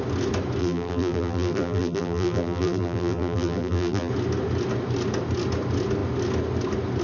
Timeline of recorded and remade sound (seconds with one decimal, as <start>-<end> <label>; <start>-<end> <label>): 0.0-0.6 recorded; 0.6-4.1 remade; 4.1-7.0 recorded